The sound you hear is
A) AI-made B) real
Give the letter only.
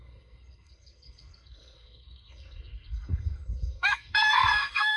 A